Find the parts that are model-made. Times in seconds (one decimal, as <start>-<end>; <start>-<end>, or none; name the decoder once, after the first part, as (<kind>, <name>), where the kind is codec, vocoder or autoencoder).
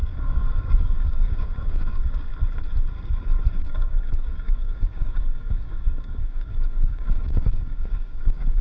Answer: 0.0-2.3 (codec, DAC); 3.5-8.6